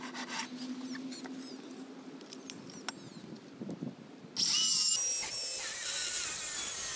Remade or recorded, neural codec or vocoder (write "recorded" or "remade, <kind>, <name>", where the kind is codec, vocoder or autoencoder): recorded